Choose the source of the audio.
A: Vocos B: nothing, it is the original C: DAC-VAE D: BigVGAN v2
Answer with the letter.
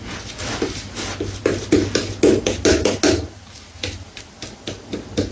B